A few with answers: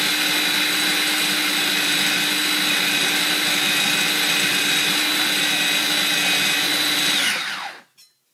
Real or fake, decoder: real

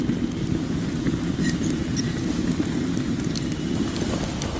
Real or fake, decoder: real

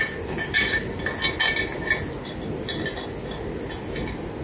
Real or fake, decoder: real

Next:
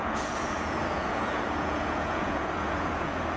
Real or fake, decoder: fake, vocoder, Vocos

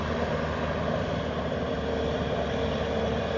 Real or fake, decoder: real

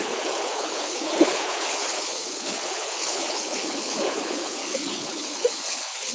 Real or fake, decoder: fake, codec, HILCodec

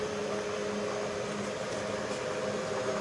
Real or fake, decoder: real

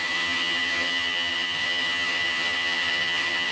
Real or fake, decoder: fake, vocoder, HiFi-GAN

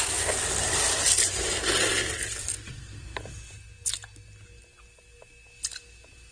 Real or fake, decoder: real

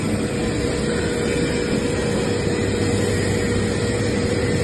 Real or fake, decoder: real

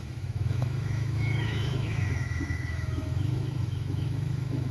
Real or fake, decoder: fake, autoencoder, DAC-VAE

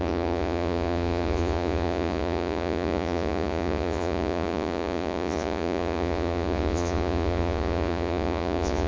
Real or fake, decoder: fake, vocoder, Vocos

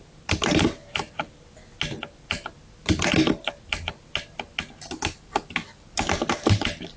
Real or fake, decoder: real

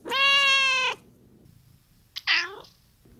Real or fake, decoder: real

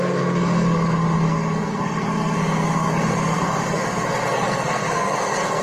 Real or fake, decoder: fake, codec, SNAC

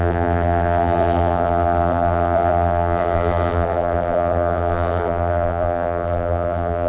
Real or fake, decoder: fake, vocoder, BigVGAN v2